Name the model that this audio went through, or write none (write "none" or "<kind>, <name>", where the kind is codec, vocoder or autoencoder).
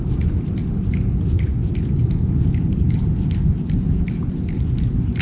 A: none